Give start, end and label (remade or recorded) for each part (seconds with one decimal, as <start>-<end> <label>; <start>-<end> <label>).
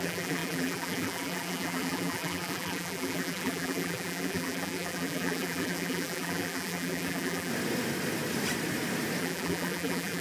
0.0-7.5 remade; 7.5-9.2 recorded; 9.2-10.2 remade